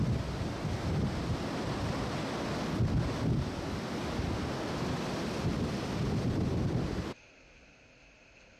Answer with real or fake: real